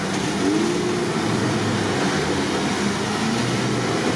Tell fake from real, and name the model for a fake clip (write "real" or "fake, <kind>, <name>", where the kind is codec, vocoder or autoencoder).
real